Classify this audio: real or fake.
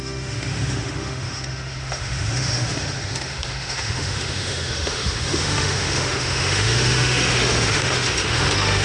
fake